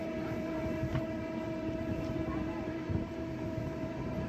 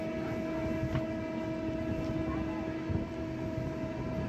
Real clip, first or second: second